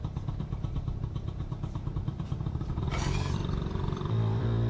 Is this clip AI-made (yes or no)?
yes